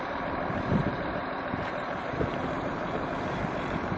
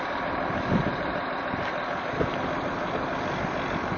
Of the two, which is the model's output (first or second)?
first